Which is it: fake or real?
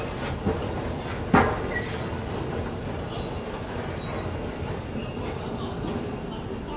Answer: real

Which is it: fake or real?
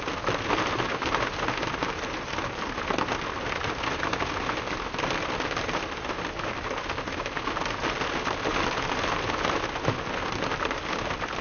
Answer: real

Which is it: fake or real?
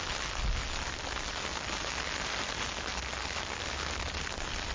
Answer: real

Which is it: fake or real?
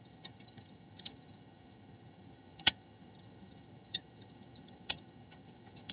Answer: fake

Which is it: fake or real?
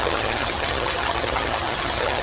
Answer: fake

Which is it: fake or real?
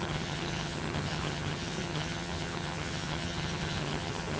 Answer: fake